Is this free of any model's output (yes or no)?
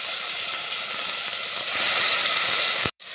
no